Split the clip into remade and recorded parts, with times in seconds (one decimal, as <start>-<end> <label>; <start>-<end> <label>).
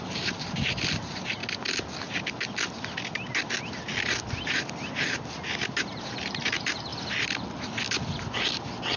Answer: 0.0-1.4 remade; 1.4-4.3 recorded; 4.3-6.9 remade; 6.9-9.0 recorded